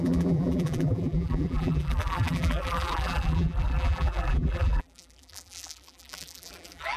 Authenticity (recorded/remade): remade